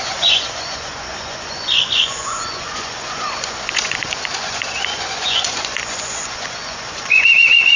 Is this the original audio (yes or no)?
no